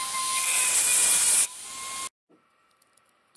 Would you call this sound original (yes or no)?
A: yes